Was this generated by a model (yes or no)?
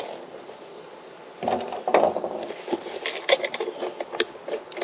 no